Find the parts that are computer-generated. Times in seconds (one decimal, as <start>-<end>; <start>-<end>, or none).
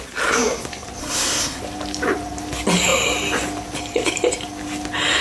1.0-1.6